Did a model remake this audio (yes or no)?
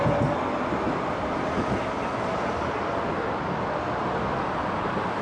no